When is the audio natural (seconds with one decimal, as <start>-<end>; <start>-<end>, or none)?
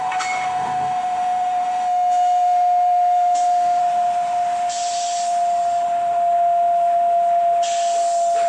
3.8-8.5